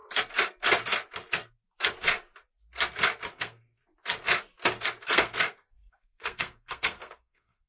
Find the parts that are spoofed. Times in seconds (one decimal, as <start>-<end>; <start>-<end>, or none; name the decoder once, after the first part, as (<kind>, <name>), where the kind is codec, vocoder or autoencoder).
3.3-3.8 (codec, SNAC); 5.1-7.7